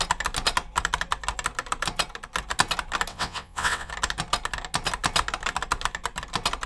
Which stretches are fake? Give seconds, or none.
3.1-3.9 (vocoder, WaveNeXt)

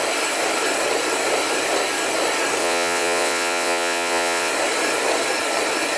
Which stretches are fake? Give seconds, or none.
2.6-4.5 (vocoder, WaveNeXt)

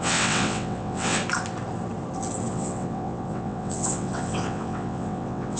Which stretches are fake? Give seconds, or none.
0.0-1.2 (vocoder, WaveNeXt); 2.5-5.6

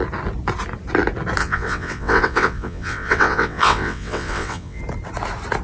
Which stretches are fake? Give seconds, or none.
1.4-4.8 (vocoder, WaveNeXt)